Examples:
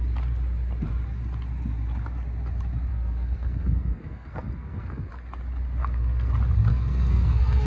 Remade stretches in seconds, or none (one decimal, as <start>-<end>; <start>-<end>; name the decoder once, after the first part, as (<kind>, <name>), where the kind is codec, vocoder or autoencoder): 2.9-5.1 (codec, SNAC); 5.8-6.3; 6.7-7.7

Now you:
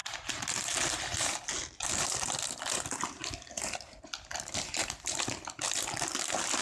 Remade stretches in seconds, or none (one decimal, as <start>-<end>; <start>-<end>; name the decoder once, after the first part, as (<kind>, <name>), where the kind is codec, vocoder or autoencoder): none

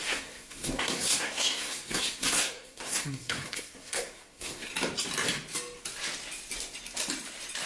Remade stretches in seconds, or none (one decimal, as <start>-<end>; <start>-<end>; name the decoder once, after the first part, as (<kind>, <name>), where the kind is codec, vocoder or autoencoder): 0.0-4.7 (codec, SNAC)